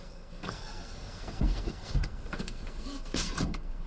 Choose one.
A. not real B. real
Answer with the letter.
A